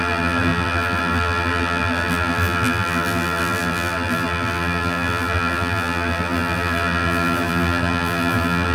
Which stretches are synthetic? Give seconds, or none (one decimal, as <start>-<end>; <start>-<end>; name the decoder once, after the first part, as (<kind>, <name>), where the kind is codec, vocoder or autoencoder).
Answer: 0.0-8.7 (vocoder, BigVGAN v2)